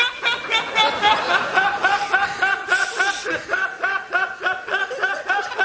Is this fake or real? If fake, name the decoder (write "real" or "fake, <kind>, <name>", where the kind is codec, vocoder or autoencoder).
real